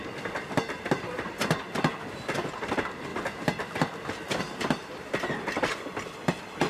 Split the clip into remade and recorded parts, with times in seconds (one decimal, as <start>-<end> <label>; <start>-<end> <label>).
0.0-6.7 recorded